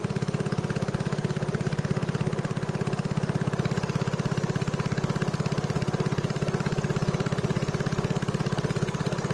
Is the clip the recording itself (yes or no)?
yes